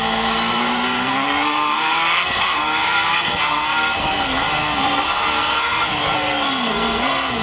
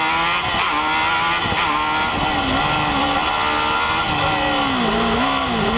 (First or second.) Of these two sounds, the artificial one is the first